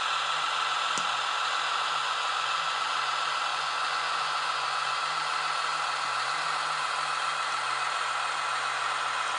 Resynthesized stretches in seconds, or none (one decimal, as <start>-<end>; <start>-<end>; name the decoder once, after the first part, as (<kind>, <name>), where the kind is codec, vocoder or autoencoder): 2.0-2.9 (vocoder, Vocos); 3.5-5.0